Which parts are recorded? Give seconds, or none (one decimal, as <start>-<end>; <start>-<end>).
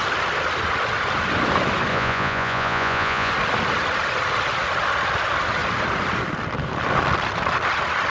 0.0-1.9; 3.3-8.1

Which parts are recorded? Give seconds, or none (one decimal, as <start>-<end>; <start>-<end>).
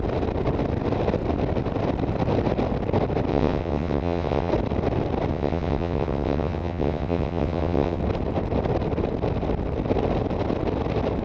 0.0-3.3; 4.5-5.3; 8.0-11.2